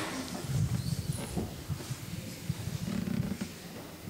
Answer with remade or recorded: recorded